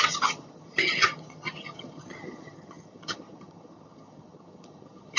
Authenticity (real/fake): fake